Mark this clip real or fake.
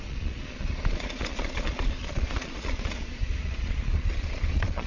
fake